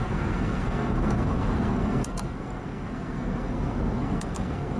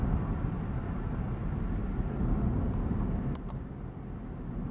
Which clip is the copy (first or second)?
first